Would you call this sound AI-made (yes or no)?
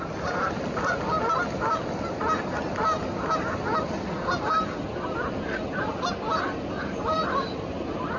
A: no